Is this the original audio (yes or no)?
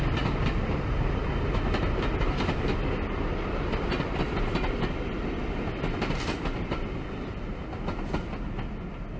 yes